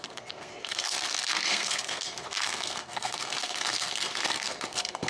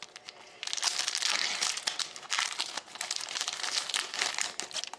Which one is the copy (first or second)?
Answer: first